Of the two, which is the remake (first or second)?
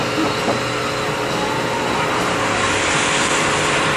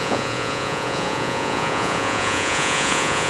second